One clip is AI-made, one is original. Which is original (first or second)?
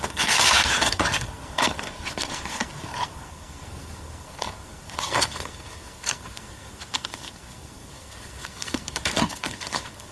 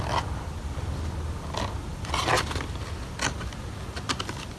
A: second